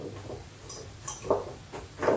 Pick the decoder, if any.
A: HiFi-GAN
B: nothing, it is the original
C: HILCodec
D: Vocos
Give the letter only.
B